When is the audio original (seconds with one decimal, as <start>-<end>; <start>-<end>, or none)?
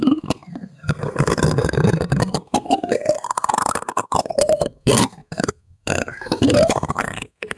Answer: none